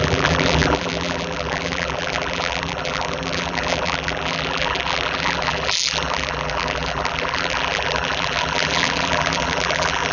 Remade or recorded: remade